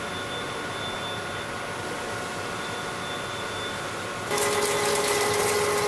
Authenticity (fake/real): real